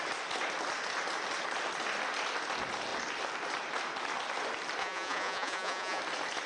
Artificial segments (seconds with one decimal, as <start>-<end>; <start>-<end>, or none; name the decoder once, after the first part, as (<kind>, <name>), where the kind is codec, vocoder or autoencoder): 4.8-6.0 (vocoder, Vocos)